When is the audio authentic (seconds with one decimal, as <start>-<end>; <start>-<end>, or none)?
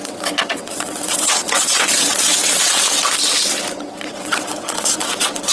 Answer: 3.0-3.7